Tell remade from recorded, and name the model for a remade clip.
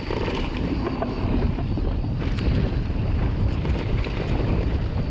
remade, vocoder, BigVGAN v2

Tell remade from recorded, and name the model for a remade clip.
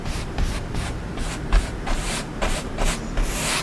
remade, vocoder, BigVGAN v2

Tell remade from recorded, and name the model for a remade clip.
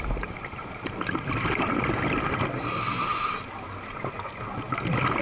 recorded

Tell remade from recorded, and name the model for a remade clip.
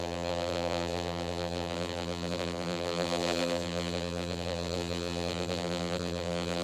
remade, vocoder, BigVGAN v2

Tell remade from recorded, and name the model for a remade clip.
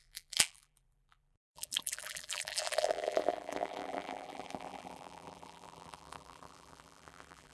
remade, vocoder, BigVGAN v2